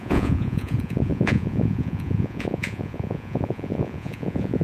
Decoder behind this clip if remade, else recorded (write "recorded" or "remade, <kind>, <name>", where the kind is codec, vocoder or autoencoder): remade, vocoder, Vocos